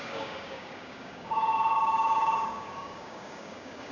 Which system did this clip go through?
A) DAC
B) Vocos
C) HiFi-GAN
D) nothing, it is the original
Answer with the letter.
A